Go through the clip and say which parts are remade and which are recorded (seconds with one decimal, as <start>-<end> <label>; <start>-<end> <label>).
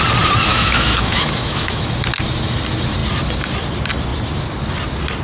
0.0-0.5 recorded; 0.5-1.9 remade; 1.9-5.2 recorded